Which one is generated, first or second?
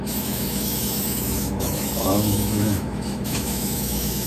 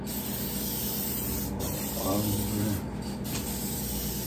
first